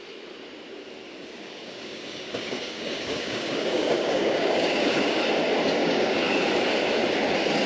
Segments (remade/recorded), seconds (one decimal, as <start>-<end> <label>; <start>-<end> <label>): 0.0-1.0 recorded; 1.0-5.2 remade; 5.2-5.8 recorded; 5.8-6.3 remade; 6.3-7.7 recorded